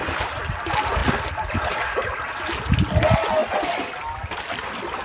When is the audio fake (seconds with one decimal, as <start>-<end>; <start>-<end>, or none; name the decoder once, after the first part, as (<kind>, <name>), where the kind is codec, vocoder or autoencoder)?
none